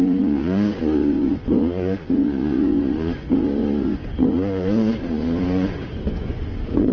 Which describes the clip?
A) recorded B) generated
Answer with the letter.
B